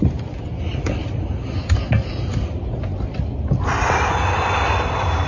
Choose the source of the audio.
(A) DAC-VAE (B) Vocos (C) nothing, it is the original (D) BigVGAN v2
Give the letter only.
C